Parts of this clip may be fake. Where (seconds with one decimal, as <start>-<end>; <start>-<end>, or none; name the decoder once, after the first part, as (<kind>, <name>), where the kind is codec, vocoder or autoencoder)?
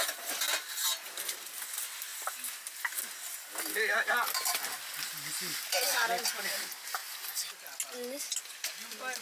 none